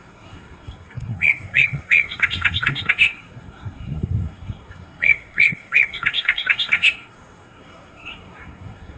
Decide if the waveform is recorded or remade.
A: remade